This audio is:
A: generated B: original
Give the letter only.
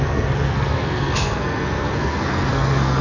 A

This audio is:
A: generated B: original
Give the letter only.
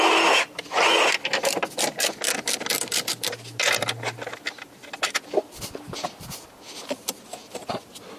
B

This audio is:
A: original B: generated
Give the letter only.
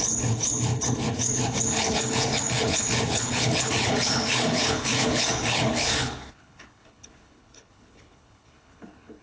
B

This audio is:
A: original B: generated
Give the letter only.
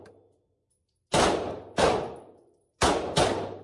A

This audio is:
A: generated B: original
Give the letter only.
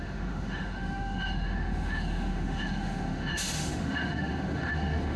A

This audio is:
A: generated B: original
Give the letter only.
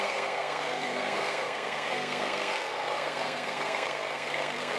A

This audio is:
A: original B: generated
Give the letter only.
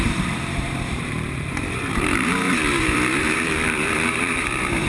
B